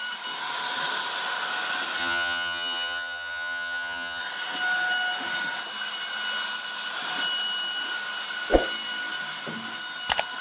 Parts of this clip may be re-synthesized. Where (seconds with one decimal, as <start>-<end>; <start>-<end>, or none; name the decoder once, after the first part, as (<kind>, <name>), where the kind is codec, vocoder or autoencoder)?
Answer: 2.0-4.2 (vocoder, HiFi-GAN)

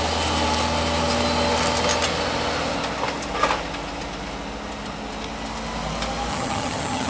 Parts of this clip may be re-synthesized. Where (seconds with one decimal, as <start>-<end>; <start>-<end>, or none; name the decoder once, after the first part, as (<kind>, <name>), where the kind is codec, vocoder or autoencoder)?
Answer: 6.3-7.1 (vocoder, HiFi-GAN)

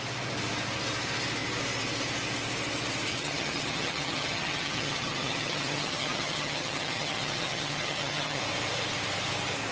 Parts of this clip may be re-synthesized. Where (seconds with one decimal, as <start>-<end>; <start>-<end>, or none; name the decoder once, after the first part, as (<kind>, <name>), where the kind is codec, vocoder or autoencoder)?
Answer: 3.1-8.4 (vocoder, HiFi-GAN)